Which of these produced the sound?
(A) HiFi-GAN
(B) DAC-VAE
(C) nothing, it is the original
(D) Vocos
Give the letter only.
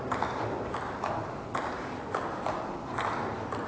C